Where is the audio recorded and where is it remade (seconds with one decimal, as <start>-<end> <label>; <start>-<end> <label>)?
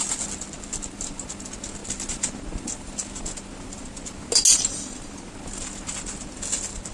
0.0-6.9 recorded